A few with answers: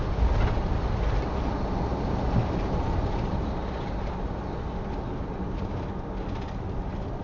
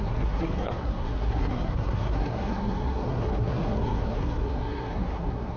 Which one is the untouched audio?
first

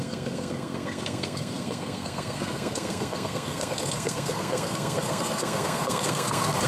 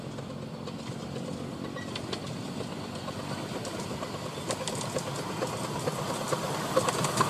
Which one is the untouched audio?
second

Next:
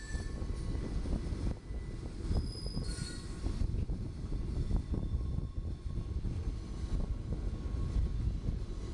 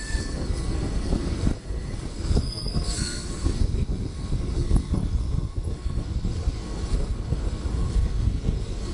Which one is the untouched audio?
first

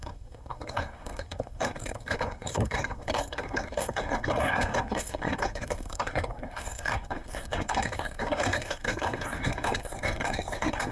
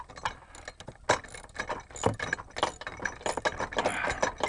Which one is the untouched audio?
second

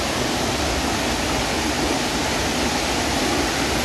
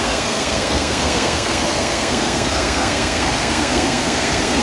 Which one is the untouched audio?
first